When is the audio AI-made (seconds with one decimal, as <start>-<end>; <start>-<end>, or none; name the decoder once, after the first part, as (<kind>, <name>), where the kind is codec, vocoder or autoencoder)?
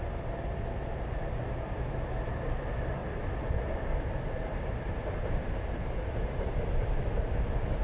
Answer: none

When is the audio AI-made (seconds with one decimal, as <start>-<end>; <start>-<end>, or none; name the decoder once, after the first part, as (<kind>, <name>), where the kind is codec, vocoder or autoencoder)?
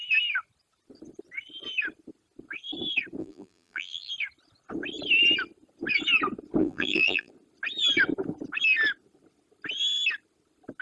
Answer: 3.2-4.1 (vocoder, BigVGAN v2); 6.6-7.3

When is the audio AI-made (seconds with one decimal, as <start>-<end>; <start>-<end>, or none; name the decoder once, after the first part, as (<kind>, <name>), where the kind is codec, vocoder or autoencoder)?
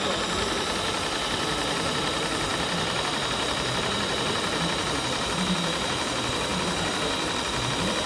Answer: 0.0-8.1 (vocoder, BigVGAN v2)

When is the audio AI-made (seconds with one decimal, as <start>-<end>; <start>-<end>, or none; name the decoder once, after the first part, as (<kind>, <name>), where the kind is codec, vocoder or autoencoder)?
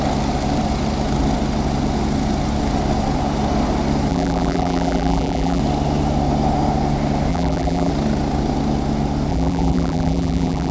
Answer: 4.1-5.6 (vocoder, BigVGAN v2); 7.3-7.9; 9.3-10.7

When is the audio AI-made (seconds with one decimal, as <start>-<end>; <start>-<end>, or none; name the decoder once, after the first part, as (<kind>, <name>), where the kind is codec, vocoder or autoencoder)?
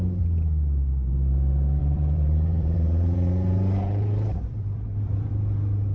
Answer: 1.8-5.3 (vocoder, BigVGAN v2)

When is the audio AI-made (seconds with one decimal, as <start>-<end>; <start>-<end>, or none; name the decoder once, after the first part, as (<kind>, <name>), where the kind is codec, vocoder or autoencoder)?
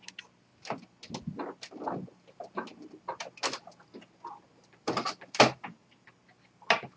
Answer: none